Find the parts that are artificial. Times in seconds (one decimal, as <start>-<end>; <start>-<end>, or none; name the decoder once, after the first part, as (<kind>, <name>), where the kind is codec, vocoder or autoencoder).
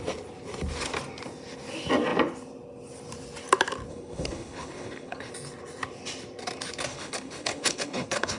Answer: 3.9-5.3 (codec, HILCodec); 6.9-8.4